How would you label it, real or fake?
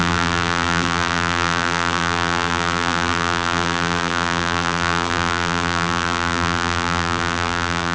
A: fake